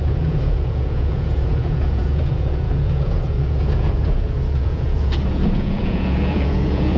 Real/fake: fake